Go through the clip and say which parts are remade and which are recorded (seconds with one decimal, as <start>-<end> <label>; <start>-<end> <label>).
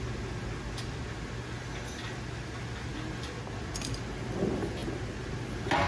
0.0-5.9 recorded